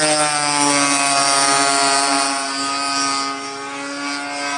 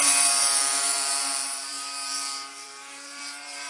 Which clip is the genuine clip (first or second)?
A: first